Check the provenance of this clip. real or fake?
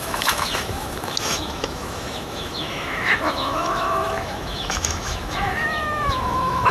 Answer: fake